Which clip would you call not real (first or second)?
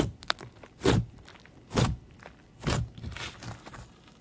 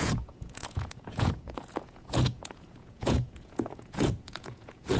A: second